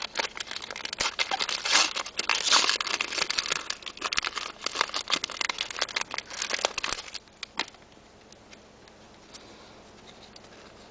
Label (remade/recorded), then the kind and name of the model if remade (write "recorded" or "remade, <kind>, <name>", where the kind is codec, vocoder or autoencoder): recorded